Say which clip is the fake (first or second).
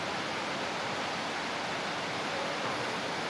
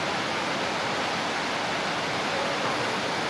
first